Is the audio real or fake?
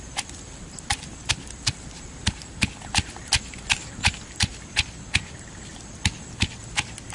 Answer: fake